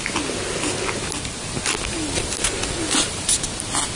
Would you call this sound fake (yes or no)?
no